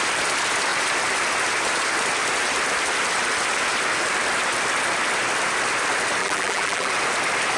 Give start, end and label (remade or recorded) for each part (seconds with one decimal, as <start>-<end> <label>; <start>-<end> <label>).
0.0-6.2 recorded; 6.2-6.9 remade; 6.9-7.6 recorded